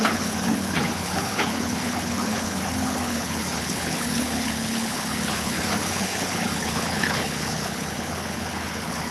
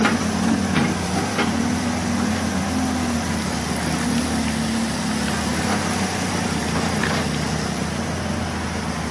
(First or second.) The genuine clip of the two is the second